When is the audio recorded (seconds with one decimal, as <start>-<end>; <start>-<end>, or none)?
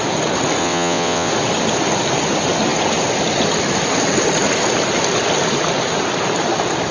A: 0.0-0.6; 1.3-6.9